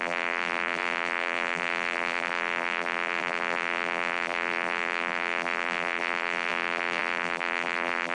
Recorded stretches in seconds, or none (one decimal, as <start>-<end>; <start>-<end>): none